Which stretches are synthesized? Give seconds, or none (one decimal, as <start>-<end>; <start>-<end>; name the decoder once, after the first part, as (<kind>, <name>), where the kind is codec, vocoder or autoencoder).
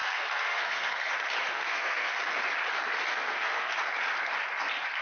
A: 0.0-1.1 (codec, SNAC); 1.5-2.1; 3.1-3.7